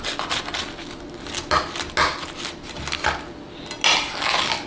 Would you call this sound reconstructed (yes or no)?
no